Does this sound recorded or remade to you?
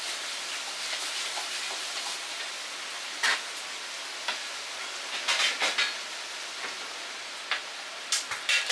recorded